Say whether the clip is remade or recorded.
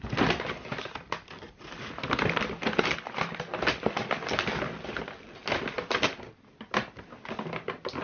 recorded